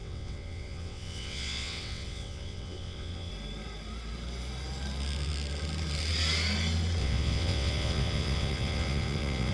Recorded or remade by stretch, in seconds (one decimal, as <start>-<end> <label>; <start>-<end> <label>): 0.0-3.3 remade; 3.3-7.0 recorded; 7.0-9.5 remade